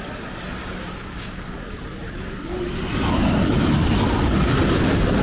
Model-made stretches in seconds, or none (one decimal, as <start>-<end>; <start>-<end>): 0.6-1.4